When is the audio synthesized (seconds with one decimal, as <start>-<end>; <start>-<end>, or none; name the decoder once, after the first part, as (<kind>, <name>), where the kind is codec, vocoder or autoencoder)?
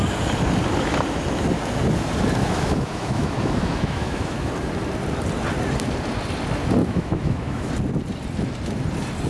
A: 2.4-4.5 (autoencoder, DAC-VAE); 6.8-7.7